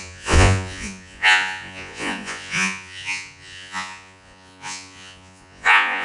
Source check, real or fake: fake